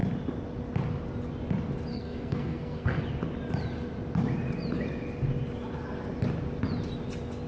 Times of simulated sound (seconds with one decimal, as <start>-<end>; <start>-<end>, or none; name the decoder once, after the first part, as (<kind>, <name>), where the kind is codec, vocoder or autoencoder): 1.9-3.0 (codec, SNAC)